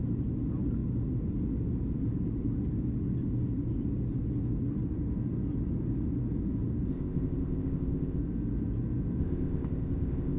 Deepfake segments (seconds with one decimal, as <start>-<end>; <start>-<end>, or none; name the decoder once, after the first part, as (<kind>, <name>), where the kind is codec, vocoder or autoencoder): 6.9-8.2 (codec, ZipCodec); 9.2-10.4